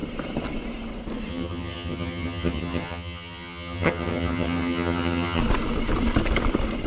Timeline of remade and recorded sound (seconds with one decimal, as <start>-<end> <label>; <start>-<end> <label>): 0.0-1.3 recorded; 1.3-5.4 remade; 5.4-6.9 recorded